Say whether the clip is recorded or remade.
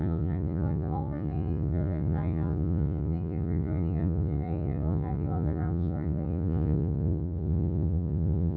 remade